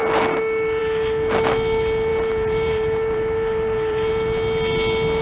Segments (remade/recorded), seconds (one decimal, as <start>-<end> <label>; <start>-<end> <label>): 0.0-2.1 recorded; 2.1-4.1 remade; 4.1-5.2 recorded